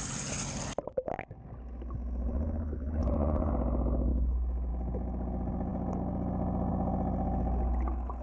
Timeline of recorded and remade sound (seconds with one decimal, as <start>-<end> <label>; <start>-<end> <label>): 0.0-2.3 recorded; 2.3-3.5 remade; 3.5-8.2 recorded